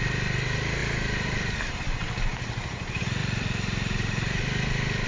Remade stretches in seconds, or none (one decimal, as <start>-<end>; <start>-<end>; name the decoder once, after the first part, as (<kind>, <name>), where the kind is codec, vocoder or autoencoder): 0.8-1.7 (vocoder, BigVGAN v2); 3.2-4.4